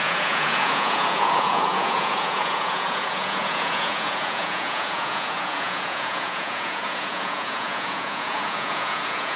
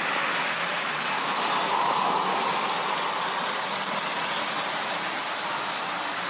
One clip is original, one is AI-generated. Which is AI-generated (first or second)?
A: first